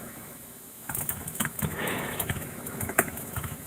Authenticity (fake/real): fake